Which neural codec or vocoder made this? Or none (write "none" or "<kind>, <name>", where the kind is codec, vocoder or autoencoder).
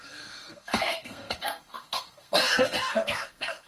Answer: codec, SNAC